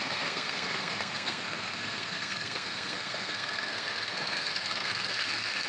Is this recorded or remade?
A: remade